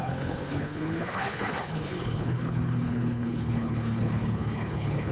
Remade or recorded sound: remade